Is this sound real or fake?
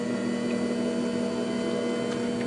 real